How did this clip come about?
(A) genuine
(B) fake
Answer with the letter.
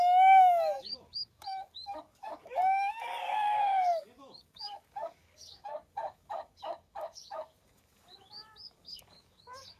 B